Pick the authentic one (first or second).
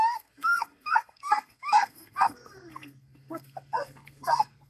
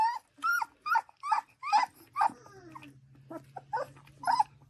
second